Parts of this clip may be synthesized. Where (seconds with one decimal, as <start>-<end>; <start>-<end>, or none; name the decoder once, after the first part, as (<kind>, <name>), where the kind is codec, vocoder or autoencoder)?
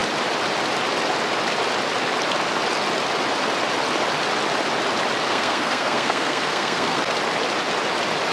5.3-7.0 (codec, SNAC)